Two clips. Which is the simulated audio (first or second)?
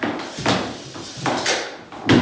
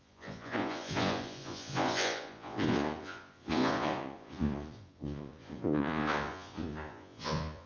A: second